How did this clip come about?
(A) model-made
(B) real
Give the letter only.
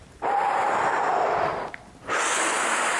A